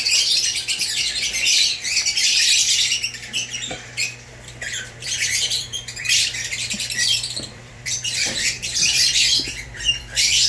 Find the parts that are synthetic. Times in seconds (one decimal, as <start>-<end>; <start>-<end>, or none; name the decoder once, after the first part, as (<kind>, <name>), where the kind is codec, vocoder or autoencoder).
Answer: 0.0-0.4 (vocoder, BigVGAN v2); 4.3-10.5